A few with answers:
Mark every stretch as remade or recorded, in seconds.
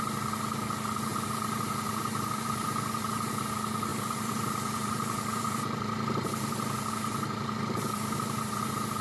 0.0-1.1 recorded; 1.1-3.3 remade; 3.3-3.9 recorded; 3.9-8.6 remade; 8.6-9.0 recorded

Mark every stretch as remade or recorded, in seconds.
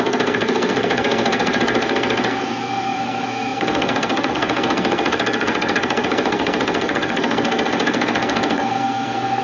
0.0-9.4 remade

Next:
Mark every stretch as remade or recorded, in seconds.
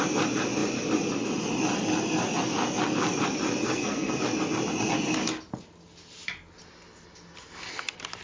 0.0-3.6 recorded; 3.6-4.2 remade; 4.2-8.2 recorded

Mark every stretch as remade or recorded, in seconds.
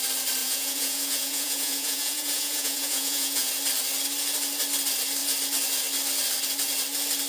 0.0-0.4 recorded; 0.4-3.5 remade; 3.5-7.3 recorded